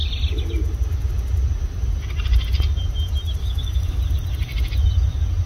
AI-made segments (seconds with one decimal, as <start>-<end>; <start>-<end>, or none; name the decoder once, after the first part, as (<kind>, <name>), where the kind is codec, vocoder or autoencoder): 3.4-4.0 (codec, DAC)